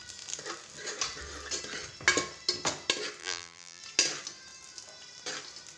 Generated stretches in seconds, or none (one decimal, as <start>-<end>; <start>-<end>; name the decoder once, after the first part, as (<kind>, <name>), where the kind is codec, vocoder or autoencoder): 3.2-3.8 (vocoder, BigVGAN v2)